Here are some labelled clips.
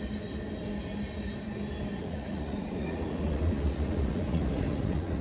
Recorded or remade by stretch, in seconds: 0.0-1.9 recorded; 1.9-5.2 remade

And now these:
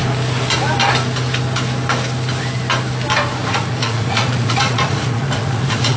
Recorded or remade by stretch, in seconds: 0.0-3.4 recorded; 3.4-6.0 remade

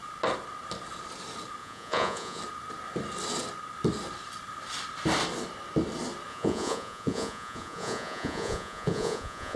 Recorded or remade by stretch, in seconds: 0.0-1.6 recorded; 1.6-2.4 remade; 2.4-6.3 recorded; 6.3-9.6 remade

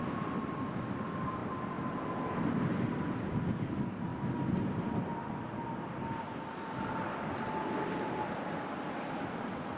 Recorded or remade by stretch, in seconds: 0.0-9.8 recorded